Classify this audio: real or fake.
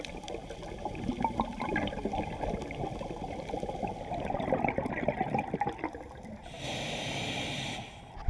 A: real